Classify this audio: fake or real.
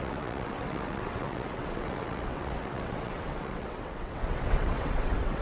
fake